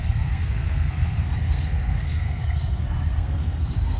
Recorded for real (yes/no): no